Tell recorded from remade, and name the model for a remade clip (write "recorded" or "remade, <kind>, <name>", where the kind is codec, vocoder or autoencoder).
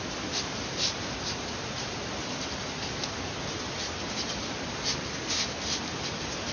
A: recorded